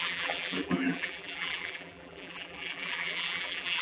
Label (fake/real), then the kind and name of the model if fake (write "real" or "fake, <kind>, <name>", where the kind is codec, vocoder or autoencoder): fake, vocoder, BigVGAN v2